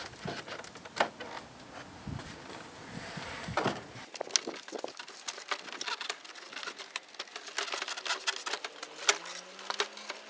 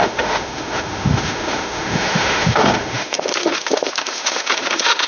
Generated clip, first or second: second